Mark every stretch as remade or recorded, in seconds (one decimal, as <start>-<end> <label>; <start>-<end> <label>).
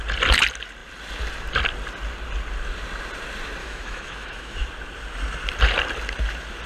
0.0-3.6 recorded; 3.6-4.7 remade; 4.7-6.7 recorded